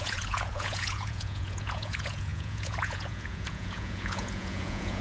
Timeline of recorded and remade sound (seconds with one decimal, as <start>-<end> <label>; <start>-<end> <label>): 0.0-5.0 remade